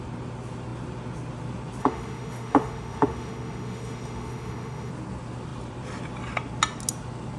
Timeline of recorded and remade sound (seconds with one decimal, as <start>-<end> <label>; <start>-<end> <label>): 0.0-1.8 recorded; 1.8-4.9 remade; 4.9-7.4 recorded